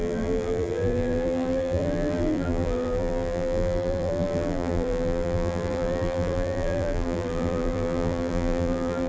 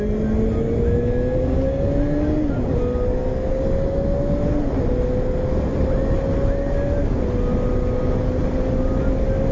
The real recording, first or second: second